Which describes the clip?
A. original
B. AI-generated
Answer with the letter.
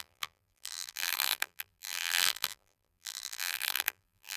B